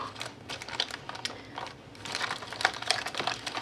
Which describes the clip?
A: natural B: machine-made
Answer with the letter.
A